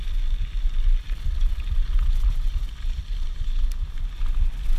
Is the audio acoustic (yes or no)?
yes